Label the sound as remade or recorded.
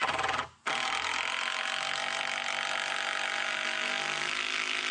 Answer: recorded